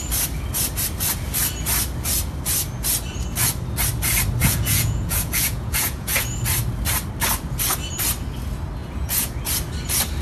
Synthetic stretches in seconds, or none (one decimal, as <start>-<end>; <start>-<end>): 4.4-6.2; 8.8-9.4